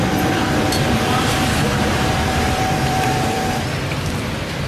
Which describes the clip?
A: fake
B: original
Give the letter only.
A